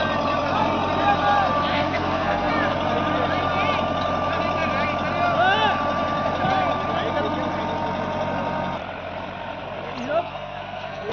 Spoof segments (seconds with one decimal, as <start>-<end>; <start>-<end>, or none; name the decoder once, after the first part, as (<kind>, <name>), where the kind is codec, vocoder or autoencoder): 1.7-2.5 (codec, SNAC); 10.2-11.1